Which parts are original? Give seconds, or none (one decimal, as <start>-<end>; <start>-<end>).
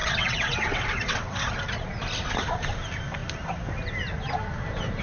1.5-5.0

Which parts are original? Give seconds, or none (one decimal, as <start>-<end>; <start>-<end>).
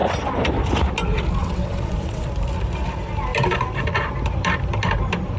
0.0-1.4; 2.3-5.4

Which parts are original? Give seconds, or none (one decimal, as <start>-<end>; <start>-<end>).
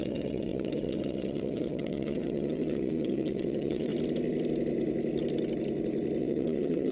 3.9-6.2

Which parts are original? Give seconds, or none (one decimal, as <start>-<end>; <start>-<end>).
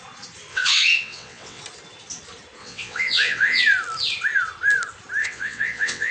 0.0-0.5; 1.6-2.6; 3.6-5.2